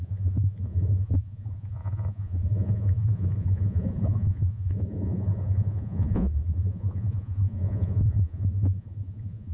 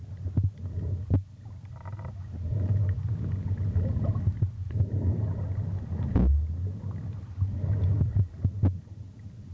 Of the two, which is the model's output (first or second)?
first